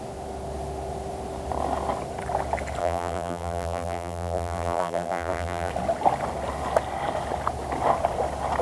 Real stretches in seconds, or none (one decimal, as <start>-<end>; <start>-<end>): 0.0-2.8; 5.7-8.6